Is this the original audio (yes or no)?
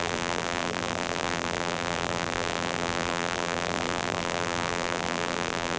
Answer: no